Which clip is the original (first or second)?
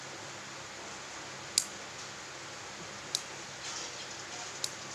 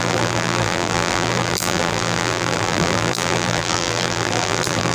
first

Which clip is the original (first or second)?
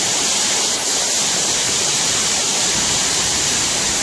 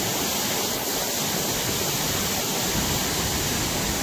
second